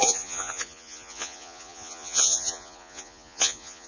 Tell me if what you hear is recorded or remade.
remade